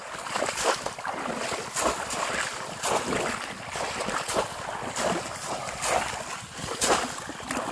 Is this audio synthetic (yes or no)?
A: no